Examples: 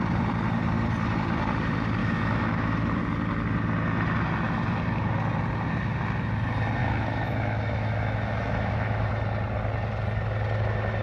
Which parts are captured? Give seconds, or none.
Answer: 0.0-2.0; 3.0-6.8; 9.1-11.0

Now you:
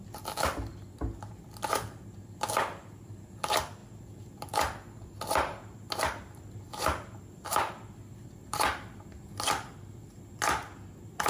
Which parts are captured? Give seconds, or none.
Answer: 0.0-8.4; 9.0-11.3

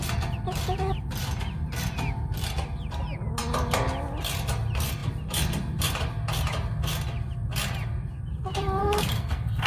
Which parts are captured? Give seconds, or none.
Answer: 0.0-8.8

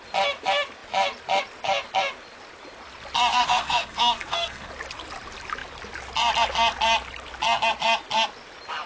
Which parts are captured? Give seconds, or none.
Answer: 0.0-3.3; 4.7-8.9

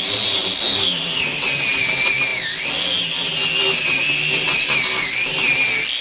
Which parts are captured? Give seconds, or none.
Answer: 0.0-0.7; 1.4-6.0

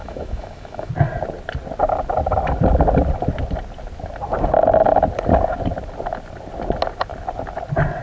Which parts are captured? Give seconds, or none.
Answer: 0.9-8.0

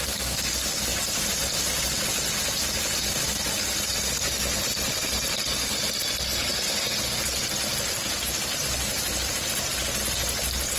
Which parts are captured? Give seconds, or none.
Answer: 0.0-10.8